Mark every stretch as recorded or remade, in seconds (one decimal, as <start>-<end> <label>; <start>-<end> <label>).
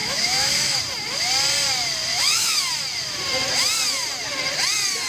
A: 0.0-0.8 remade; 0.8-2.1 recorded; 2.1-2.6 remade; 2.6-5.1 recorded